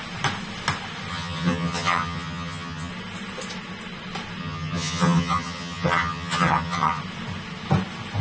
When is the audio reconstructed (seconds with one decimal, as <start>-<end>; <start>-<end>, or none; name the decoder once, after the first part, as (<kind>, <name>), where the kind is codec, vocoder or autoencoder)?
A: 1.1-2.9 (vocoder, HiFi-GAN); 4.4-7.0